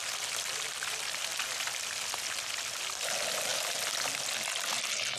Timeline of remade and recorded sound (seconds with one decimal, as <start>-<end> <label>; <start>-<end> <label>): 0.0-5.2 recorded